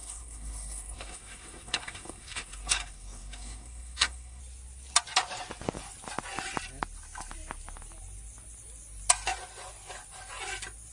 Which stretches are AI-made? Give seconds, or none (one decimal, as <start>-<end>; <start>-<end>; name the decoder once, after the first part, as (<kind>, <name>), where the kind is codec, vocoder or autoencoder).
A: 0.0-4.4 (codec, SNAC)